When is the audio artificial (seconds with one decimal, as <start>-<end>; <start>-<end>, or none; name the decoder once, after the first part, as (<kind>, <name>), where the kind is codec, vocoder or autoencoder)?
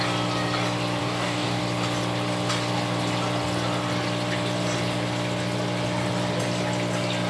1.0-1.6 (codec, DAC)